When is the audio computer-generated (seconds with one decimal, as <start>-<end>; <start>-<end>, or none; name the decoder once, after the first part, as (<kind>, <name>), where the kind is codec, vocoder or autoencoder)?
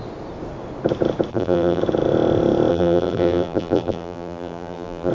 1.3-1.8 (vocoder, BigVGAN v2); 2.7-5.1